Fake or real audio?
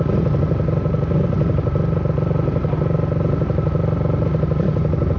real